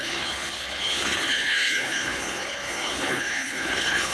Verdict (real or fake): fake